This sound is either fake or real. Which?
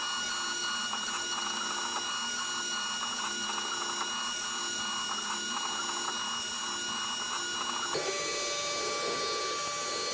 real